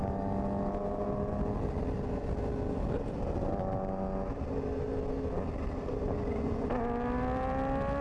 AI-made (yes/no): no